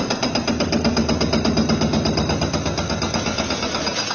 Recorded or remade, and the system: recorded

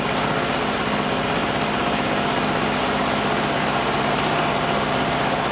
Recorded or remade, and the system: recorded